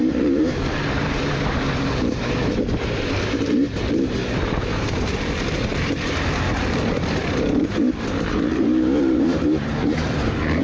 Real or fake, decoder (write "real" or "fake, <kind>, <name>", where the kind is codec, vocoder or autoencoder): fake, vocoder, BigVGAN v2